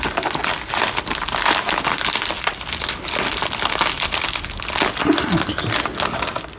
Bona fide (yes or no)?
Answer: yes